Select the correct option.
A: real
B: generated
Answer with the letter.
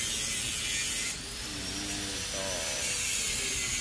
A